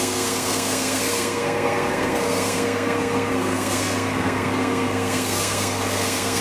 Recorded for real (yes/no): no